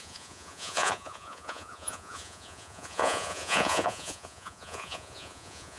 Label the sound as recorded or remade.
remade